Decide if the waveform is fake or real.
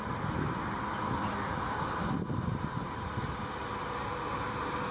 real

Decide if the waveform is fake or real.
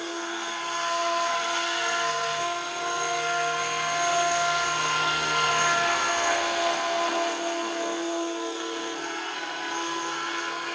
fake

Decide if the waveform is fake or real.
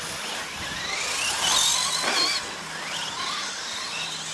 real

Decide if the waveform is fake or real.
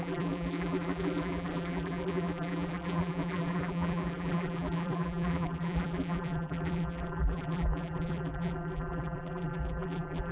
fake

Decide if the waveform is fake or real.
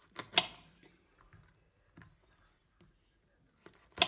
real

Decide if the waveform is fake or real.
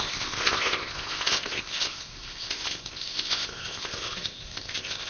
fake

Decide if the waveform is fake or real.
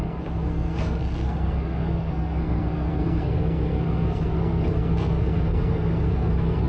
fake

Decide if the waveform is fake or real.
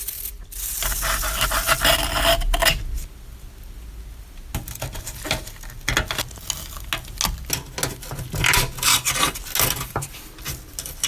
real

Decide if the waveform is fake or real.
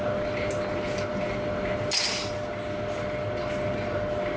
real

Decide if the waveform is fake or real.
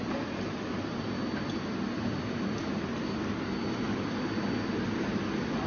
real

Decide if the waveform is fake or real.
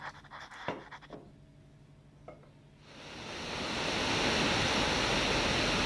real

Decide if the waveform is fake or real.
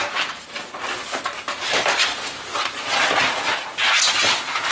real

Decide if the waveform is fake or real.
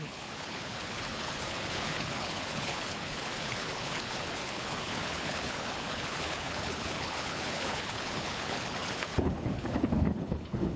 fake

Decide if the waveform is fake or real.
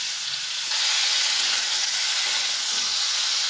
fake